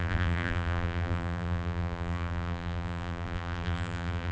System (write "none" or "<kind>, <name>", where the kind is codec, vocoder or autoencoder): vocoder, BigVGAN v2